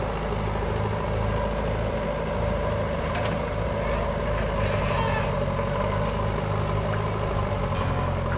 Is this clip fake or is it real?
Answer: real